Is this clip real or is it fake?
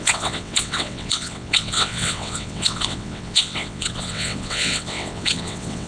fake